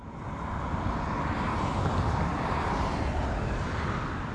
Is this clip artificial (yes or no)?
no